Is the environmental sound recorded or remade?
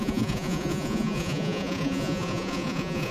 remade